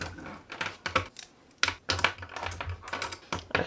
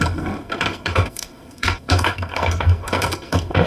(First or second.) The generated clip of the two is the second